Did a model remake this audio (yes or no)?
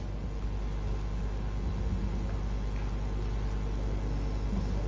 no